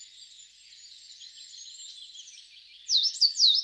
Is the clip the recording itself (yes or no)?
yes